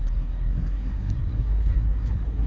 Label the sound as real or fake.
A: fake